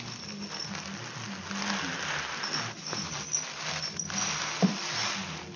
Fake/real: real